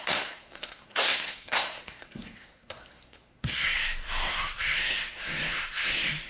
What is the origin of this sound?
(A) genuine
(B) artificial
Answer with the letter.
B